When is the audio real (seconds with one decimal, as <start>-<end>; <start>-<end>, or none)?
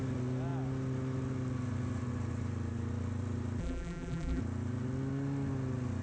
0.0-3.6; 4.4-6.0